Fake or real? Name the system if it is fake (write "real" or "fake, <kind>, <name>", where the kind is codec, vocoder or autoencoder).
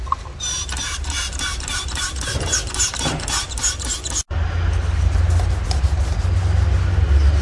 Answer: real